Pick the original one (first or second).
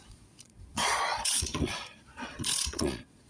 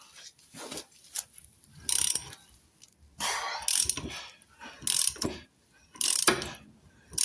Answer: second